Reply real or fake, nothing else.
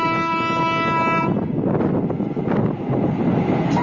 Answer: real